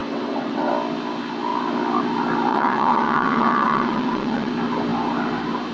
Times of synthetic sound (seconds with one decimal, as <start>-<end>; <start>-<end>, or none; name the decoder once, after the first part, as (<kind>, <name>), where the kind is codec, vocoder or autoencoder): 0.0-0.7 (vocoder, WaveNeXt); 2.5-4.5